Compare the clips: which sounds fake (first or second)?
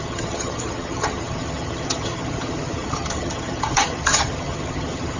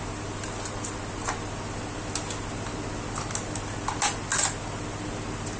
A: first